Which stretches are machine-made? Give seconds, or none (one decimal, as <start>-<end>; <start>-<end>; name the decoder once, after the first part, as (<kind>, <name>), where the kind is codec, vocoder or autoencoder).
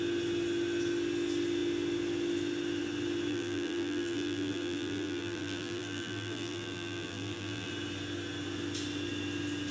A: 3.3-7.7 (vocoder, BigVGAN v2)